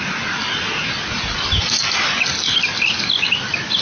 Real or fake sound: real